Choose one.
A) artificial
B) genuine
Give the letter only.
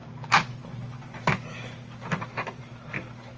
B